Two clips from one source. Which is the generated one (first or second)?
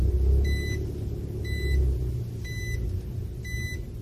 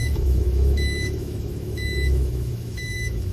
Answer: second